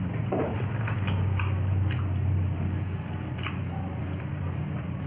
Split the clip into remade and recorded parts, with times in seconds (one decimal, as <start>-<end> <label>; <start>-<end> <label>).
0.0-5.1 remade